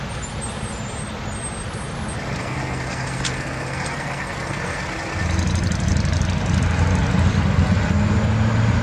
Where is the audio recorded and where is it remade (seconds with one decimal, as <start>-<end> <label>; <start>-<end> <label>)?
0.0-2.4 recorded; 2.4-4.8 remade; 4.8-8.8 recorded